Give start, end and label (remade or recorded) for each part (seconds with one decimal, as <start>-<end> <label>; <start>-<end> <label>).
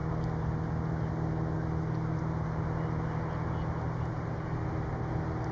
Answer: 0.0-5.5 recorded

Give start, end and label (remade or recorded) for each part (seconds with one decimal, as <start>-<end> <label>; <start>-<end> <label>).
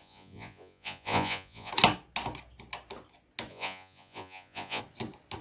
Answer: 0.0-1.7 remade; 1.7-3.5 recorded; 3.5-4.8 remade; 4.8-5.4 recorded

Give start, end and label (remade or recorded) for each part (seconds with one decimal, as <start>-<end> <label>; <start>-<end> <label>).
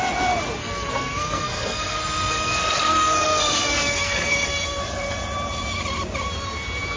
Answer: 0.0-0.6 recorded; 0.6-4.8 remade; 4.8-7.0 recorded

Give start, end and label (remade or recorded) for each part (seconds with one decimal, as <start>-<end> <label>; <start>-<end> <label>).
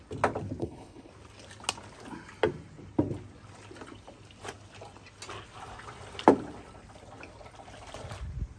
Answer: 0.0-0.6 recorded; 0.6-1.1 remade; 1.1-8.6 recorded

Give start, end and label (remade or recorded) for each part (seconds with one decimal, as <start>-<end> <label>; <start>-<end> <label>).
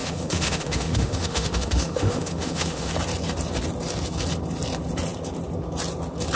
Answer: 0.0-2.9 remade; 2.9-6.4 recorded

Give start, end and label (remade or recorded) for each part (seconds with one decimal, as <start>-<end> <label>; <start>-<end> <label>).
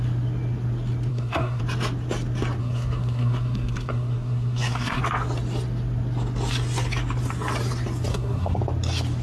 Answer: 0.0-1.1 recorded; 1.1-1.6 remade; 1.6-2.6 recorded; 2.6-5.0 remade; 5.0-8.1 recorded; 8.1-8.6 remade; 8.6-9.2 recorded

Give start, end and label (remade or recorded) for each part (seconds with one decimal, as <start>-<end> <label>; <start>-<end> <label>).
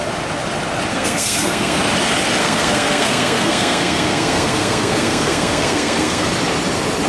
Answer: 0.0-0.9 recorded; 0.9-1.8 remade; 1.8-2.4 recorded; 2.4-6.3 remade; 6.3-7.1 recorded